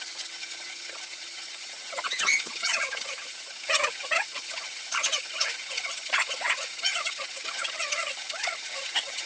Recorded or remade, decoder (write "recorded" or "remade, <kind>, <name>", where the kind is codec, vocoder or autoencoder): remade, vocoder, HiFi-GAN